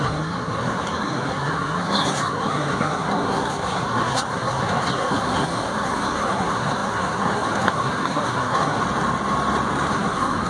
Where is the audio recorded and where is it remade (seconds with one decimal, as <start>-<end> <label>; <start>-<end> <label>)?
0.0-8.8 remade; 8.8-9.9 recorded; 9.9-10.5 remade